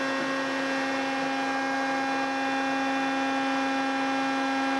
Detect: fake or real real